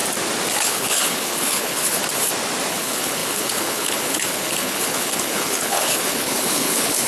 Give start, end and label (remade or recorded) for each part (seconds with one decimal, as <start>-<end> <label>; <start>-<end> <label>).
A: 0.0-0.5 recorded; 0.5-2.0 remade; 2.0-2.7 recorded; 2.7-7.1 remade